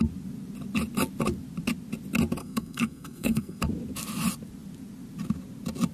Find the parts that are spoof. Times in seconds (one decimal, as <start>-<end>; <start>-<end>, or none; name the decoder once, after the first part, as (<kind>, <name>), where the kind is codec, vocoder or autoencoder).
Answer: 2.4-3.6 (codec, SNAC)